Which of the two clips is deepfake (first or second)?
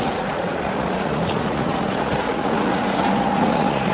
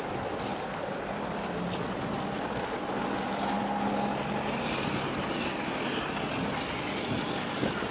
first